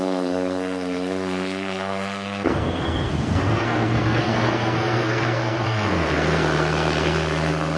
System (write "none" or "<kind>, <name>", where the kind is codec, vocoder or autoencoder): codec, SNAC